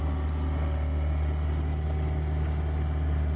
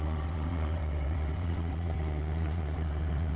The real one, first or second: first